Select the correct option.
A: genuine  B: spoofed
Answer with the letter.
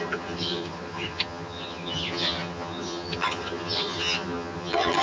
B